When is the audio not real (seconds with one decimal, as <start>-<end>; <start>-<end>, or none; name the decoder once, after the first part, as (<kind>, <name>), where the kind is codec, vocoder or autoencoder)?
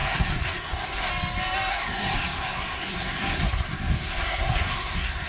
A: 0.0-1.1 (codec, SNAC); 1.7-5.3